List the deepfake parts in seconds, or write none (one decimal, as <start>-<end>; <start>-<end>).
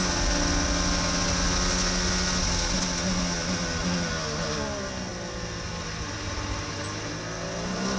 none